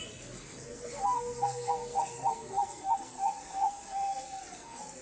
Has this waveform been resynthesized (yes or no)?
yes